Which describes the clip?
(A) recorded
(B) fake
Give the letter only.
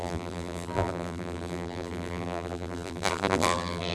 B